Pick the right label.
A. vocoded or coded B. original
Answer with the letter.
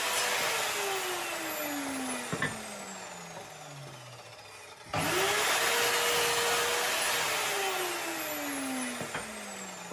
B